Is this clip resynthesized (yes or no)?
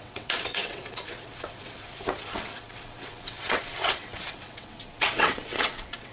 yes